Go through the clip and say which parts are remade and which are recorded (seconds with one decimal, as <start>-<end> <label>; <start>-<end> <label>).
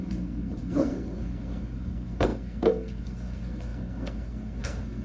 0.0-5.0 remade